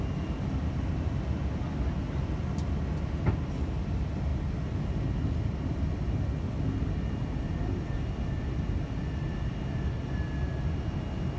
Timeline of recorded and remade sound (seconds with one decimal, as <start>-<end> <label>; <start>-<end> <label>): 0.0-11.4 recorded